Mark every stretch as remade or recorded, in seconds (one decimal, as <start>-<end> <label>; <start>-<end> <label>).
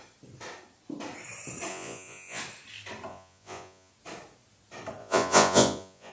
0.0-1.7 recorded; 1.7-2.4 remade; 2.4-3.1 recorded; 3.1-3.9 remade; 3.9-5.0 recorded; 5.0-6.1 remade